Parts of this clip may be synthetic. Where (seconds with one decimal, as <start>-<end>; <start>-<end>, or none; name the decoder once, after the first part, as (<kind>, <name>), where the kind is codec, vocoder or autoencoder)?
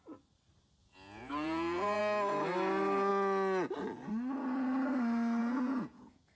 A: 0.8-2.0 (vocoder, Vocos); 5.4-6.4